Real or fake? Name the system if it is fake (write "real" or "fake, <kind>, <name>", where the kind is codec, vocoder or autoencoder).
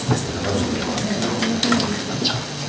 real